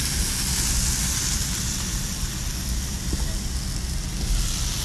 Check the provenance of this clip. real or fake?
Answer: real